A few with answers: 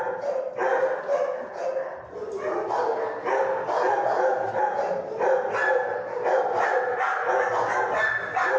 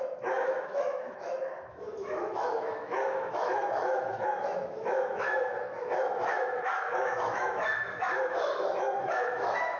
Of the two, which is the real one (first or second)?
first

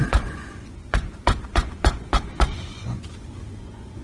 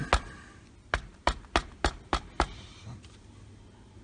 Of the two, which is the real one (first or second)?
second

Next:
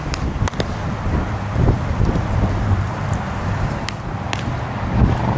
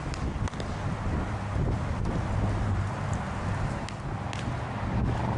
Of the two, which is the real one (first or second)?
second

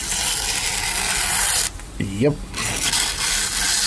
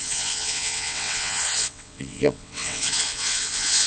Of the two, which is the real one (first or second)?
first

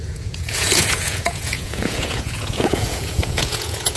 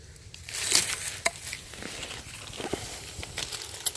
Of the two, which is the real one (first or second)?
second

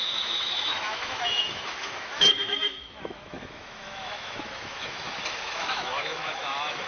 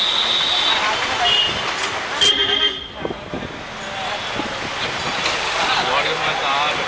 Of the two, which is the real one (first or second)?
second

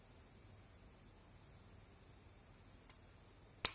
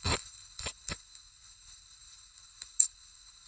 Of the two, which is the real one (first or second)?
first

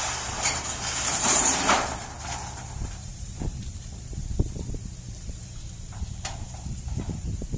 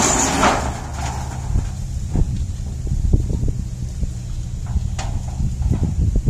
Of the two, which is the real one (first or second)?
second